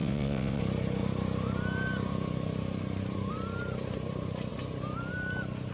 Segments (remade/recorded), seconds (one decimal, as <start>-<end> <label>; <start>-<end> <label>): 0.0-0.6 remade; 0.6-5.7 recorded